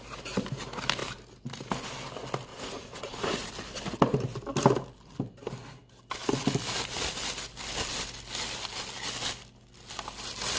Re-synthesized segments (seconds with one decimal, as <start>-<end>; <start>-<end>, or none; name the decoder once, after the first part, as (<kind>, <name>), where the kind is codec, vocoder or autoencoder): 2.5-3.5 (vocoder, Vocos)